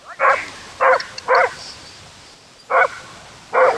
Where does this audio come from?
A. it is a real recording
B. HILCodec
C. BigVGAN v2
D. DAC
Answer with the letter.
A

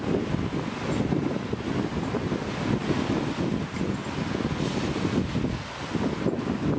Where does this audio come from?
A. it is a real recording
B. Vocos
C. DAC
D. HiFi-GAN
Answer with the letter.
A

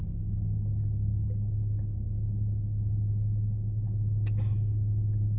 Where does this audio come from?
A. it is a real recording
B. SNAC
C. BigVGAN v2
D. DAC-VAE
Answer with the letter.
A